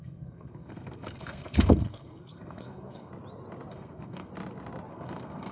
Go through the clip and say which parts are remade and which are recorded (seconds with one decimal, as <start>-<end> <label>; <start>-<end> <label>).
0.0-3.1 remade; 3.1-3.7 recorded; 3.7-4.3 remade; 4.3-4.9 recorded; 4.9-5.5 remade